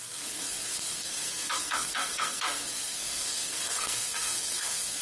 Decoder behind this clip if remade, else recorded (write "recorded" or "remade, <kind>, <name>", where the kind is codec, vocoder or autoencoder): remade, codec, SNAC